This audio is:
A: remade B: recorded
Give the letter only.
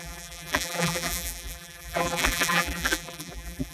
A